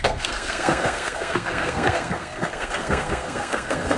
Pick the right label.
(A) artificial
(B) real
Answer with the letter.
A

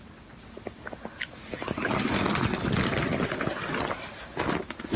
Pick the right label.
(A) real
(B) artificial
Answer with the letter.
A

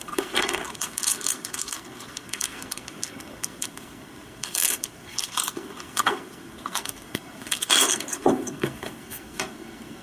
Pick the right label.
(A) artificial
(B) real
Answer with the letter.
A